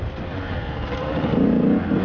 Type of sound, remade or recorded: recorded